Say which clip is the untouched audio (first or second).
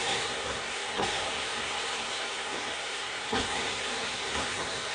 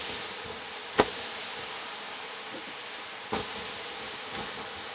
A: second